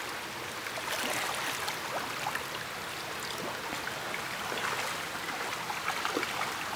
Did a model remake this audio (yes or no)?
no